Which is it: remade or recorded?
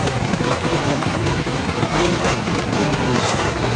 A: remade